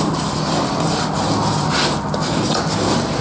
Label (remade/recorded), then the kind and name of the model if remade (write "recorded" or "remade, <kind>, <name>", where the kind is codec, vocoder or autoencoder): recorded